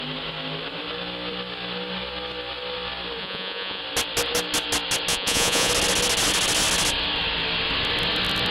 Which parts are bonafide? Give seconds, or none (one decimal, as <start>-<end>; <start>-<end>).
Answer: 0.0-3.2; 3.8-5.1; 5.7-8.5